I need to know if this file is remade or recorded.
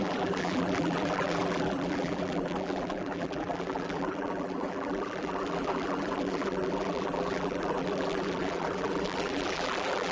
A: remade